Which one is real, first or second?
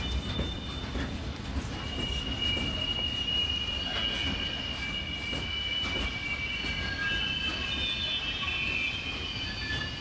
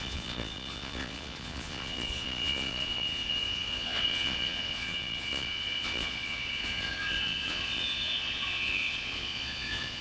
first